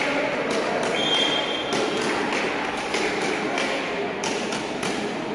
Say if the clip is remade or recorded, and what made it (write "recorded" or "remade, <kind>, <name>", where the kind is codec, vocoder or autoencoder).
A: recorded